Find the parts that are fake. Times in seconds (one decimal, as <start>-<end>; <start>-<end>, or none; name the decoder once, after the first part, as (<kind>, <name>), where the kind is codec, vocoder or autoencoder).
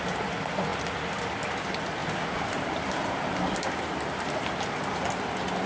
none